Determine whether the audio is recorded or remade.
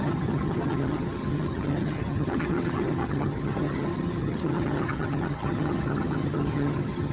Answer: remade